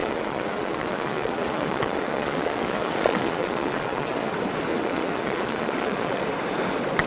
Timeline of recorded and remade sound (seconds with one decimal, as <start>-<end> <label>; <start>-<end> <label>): 0.0-4.3 remade; 4.3-4.7 recorded; 4.7-6.2 remade; 6.2-7.1 recorded

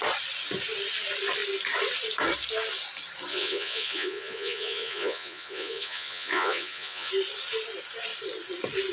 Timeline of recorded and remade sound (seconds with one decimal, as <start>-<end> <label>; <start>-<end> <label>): 0.0-3.3 recorded; 3.3-7.1 remade; 7.1-8.9 recorded

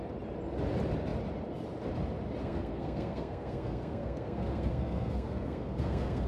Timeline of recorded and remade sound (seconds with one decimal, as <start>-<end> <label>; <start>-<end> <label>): 0.0-2.4 recorded; 2.4-6.3 remade

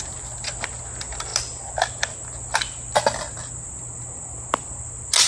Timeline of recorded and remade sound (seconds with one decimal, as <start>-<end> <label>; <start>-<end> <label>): 0.0-5.3 recorded

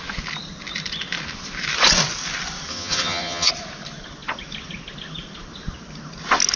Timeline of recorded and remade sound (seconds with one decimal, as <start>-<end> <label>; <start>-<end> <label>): 0.0-2.7 recorded; 2.7-3.5 remade; 3.5-6.6 recorded

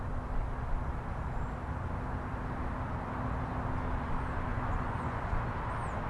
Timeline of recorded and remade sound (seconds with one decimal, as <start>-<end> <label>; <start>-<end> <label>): 0.0-4.5 recorded; 4.5-5.4 remade; 5.4-6.1 recorded

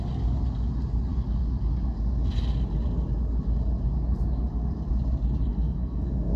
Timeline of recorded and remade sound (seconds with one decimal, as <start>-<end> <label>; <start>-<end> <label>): 0.0-5.5 recorded; 5.5-6.4 remade